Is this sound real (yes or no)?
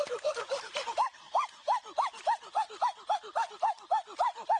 no